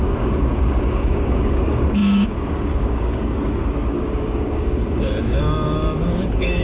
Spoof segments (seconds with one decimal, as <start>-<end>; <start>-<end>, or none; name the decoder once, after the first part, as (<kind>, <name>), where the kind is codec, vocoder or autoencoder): 0.0-6.6 (codec, DAC)